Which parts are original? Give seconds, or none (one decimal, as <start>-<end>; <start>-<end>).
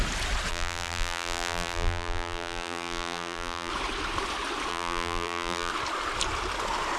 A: 0.0-0.5; 3.7-4.7; 5.7-7.0